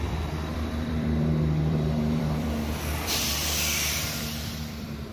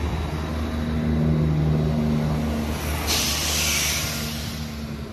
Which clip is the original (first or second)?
second